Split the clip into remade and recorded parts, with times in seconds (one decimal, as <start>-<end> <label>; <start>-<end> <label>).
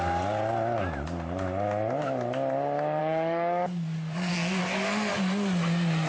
0.0-3.0 recorded; 3.0-4.3 remade; 4.3-6.1 recorded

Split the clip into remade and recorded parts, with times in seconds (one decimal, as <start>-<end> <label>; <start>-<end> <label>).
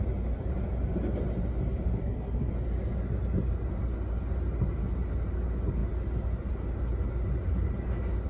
0.0-2.0 recorded; 2.0-2.5 remade; 2.5-8.3 recorded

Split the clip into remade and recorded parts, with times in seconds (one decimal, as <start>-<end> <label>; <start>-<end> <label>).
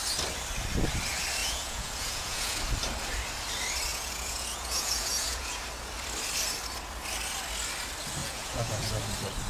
0.0-1.4 recorded; 1.4-2.6 remade; 2.6-3.9 recorded; 3.9-5.6 remade; 5.6-8.2 recorded; 8.2-8.9 remade; 8.9-9.5 recorded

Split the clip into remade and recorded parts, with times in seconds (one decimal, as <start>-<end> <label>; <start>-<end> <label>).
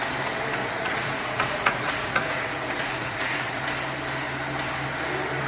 0.0-0.6 recorded; 0.6-3.6 remade; 3.6-5.5 recorded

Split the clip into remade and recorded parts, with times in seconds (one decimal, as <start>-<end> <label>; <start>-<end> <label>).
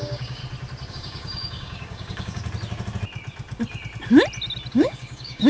0.0-0.4 remade; 0.4-0.9 recorded; 0.9-2.4 remade; 2.4-4.7 recorded; 4.7-5.5 remade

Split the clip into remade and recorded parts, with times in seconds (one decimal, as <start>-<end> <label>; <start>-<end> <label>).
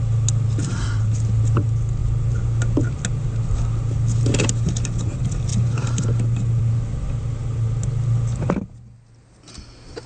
0.0-10.1 recorded